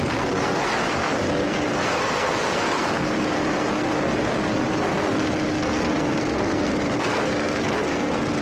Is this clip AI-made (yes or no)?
yes